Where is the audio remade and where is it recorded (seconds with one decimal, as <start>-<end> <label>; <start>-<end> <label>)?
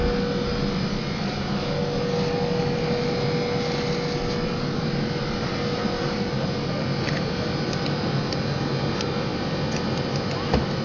0.0-10.8 recorded